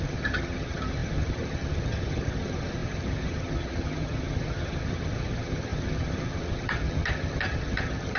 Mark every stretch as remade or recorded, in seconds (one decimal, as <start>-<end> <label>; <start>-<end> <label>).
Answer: 0.0-8.2 remade